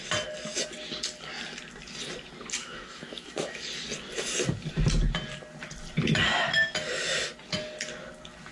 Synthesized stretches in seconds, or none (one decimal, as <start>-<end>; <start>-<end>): 2.6-3.6